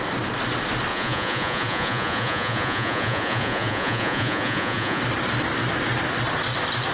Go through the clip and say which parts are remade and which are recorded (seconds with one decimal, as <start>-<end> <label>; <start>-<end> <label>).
0.0-0.9 recorded; 0.9-5.0 remade; 5.0-6.9 recorded